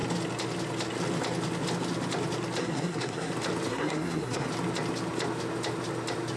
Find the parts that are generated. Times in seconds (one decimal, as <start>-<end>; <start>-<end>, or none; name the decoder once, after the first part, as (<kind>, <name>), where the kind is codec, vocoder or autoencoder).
2.6-3.3 (codec, SNAC); 3.7-4.5